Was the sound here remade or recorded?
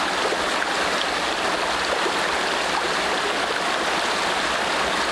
recorded